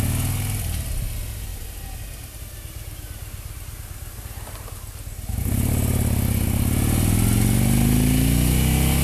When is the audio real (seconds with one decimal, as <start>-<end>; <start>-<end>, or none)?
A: 0.0-1.5; 5.7-9.0